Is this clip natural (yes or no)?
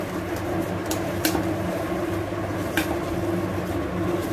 yes